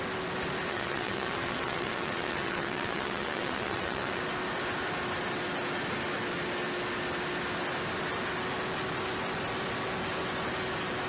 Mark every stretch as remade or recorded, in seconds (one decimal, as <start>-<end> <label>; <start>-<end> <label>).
0.0-0.7 recorded; 0.7-4.2 remade; 4.2-11.1 recorded